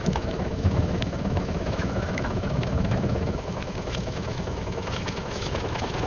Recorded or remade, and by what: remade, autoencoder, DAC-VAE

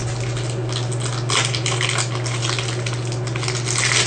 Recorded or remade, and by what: recorded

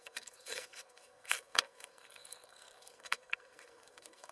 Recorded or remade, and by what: remade, codec, SNAC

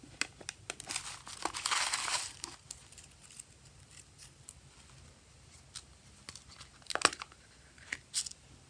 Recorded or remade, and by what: recorded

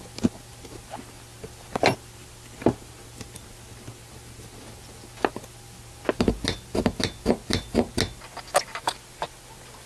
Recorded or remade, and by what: recorded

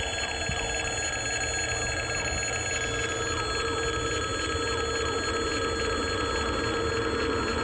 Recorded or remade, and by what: recorded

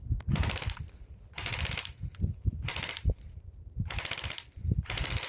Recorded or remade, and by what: remade, vocoder, BigVGAN v2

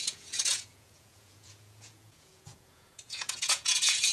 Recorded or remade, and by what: remade, vocoder, Vocos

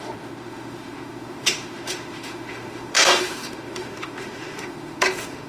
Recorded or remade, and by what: remade, autoencoder, DAC-VAE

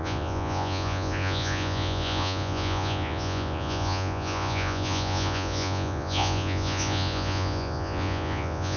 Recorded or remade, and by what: remade, vocoder, Vocos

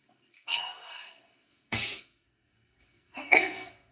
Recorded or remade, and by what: remade, codec, SNAC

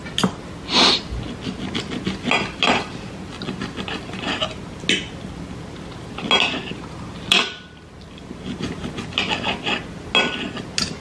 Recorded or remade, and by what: recorded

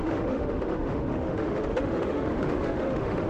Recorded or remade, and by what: remade, autoencoder, DAC-VAE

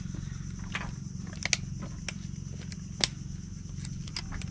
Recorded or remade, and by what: recorded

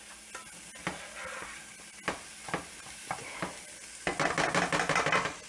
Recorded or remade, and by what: recorded